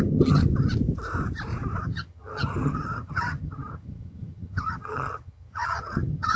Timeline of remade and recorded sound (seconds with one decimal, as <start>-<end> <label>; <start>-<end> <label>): 0.0-0.4 remade; 0.4-1.8 recorded; 1.8-6.4 remade